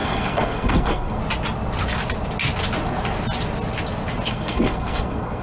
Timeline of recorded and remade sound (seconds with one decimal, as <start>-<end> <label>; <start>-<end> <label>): 0.0-1.2 remade; 1.2-4.3 recorded; 4.3-5.4 remade